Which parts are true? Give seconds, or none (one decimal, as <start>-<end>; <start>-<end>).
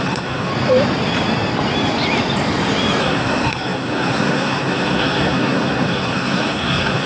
0.5-3.0